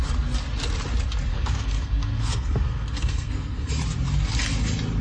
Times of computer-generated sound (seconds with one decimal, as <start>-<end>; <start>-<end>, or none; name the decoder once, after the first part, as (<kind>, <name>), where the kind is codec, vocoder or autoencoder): 1.3-3.7 (codec, SNAC)